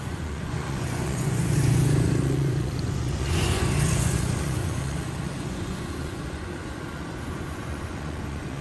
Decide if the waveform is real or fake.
fake